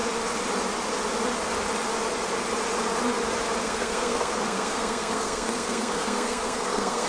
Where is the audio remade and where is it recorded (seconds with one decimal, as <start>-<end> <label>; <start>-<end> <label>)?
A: 0.0-3.6 recorded; 3.6-7.1 remade